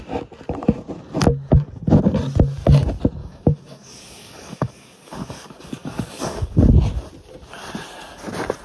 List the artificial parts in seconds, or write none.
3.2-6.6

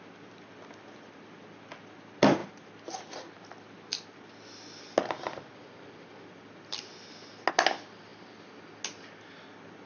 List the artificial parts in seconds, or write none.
none

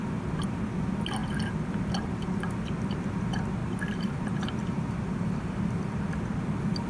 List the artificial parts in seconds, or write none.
3.6-6.1